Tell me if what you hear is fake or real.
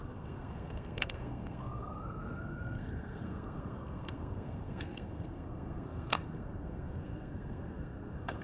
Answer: fake